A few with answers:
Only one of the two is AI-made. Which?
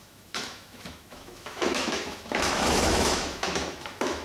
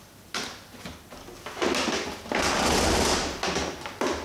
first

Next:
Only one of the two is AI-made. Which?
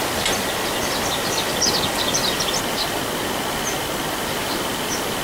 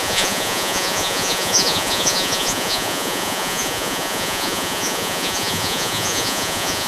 second